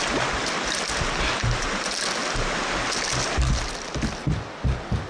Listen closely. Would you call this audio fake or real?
real